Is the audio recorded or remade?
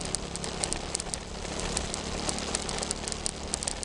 recorded